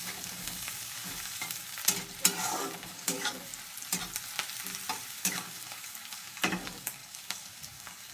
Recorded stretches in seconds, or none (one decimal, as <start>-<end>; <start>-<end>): 1.8-2.4; 3.5-5.1